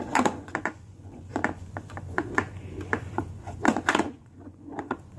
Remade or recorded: remade